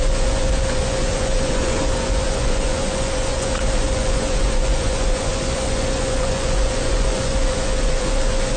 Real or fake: fake